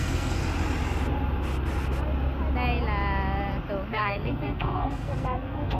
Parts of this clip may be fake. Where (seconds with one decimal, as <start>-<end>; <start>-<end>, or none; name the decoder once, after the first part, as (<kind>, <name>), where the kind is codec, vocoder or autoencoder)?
0.0-0.4 (codec, SNAC); 3.9-5.8